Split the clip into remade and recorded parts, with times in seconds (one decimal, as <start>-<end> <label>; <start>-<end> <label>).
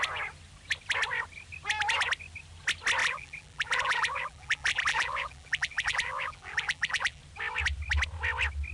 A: 0.0-3.0 recorded; 3.0-7.2 remade; 7.2-8.7 recorded